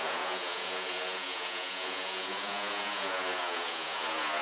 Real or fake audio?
fake